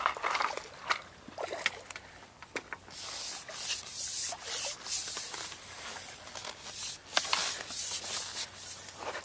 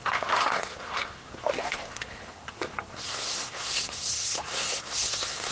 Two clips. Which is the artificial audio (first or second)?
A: second